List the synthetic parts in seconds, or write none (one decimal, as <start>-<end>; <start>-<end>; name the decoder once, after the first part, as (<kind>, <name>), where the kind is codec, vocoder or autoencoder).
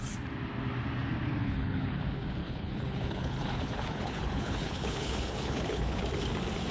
1.4-2.0 (codec, HILCodec); 2.4-6.0